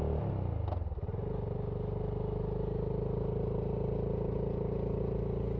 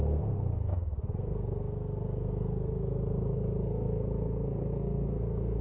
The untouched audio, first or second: first